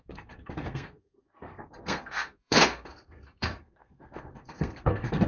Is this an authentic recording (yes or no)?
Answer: no